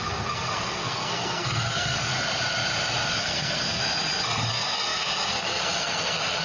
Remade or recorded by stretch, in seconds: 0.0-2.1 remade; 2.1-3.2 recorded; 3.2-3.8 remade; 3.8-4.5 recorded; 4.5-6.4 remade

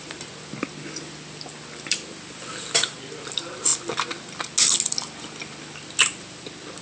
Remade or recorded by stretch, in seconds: 0.0-6.8 recorded

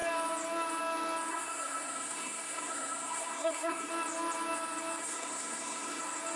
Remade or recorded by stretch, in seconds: 0.0-1.3 recorded; 1.3-3.9 remade; 3.9-5.0 recorded; 5.0-6.0 remade; 6.0-6.4 recorded

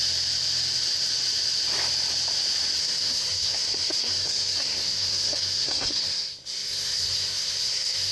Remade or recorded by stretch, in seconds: 0.0-2.8 recorded; 2.8-8.1 remade

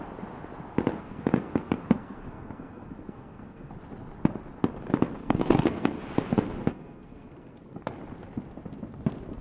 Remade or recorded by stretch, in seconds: 0.0-1.0 recorded; 1.0-3.7 remade; 3.7-5.2 recorded; 5.2-6.0 remade; 6.0-6.7 recorded; 6.7-7.9 remade; 7.9-9.4 recorded

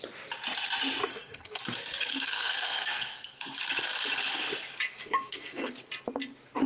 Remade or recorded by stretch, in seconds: 0.0-1.1 recorded; 1.1-1.6 remade; 1.6-2.1 recorded; 2.1-3.4 remade; 3.4-4.9 recorded; 4.9-5.7 remade; 5.7-6.7 recorded

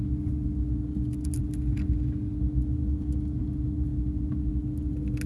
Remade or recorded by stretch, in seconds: 0.0-5.3 recorded

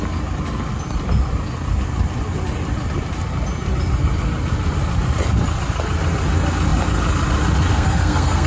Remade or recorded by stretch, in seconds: 0.0-7.7 recorded; 7.7-8.5 remade